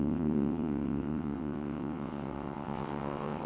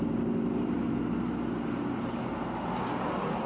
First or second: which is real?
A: second